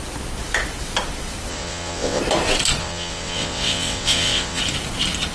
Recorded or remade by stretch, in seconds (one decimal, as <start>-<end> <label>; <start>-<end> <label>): 0.0-1.5 recorded; 1.5-2.2 remade; 2.2-2.8 recorded; 2.8-4.6 remade; 4.6-5.3 recorded